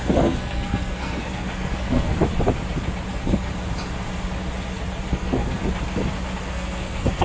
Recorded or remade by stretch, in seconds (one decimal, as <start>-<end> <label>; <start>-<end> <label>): 0.0-2.2 remade; 2.2-3.1 recorded; 3.1-3.5 remade; 3.5-5.1 recorded; 5.1-5.6 remade; 5.6-6.4 recorded; 6.4-7.2 remade